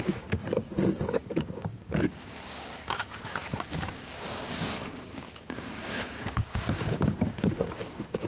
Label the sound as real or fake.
fake